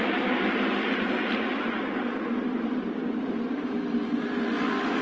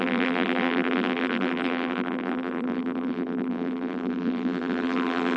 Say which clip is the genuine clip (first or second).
first